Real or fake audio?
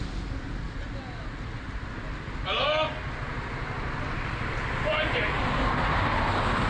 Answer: real